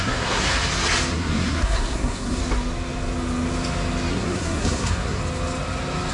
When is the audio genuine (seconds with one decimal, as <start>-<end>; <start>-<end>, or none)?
0.6-1.1; 2.4-4.1; 5.2-6.1